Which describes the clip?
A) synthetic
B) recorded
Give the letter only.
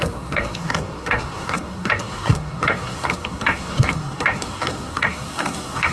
A